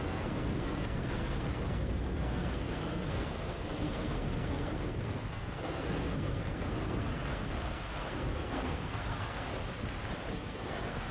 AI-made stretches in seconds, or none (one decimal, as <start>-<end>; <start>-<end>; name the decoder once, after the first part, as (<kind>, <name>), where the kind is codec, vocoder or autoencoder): 0.0-9.5 (codec, SNAC); 10.3-11.1